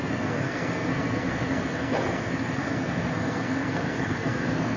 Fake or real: fake